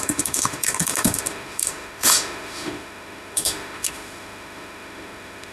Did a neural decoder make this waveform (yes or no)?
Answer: yes